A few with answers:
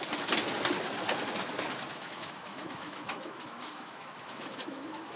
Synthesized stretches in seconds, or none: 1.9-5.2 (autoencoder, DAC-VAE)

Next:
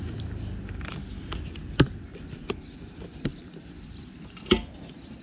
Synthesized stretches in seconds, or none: none

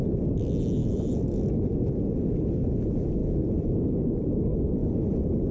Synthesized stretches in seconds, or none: 3.2-3.8 (vocoder, Vocos)

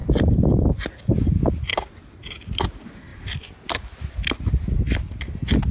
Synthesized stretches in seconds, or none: none

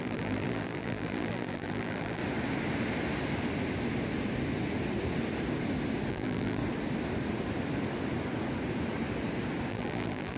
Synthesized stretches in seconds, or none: 0.0-2.2 (vocoder, BigVGAN v2); 6.1-6.6; 9.7-10.4